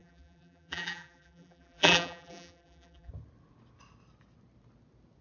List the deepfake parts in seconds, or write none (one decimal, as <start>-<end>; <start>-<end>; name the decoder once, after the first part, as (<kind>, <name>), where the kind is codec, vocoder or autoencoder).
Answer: 0.0-3.1 (vocoder, BigVGAN v2)